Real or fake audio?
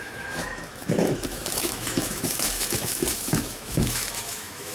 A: fake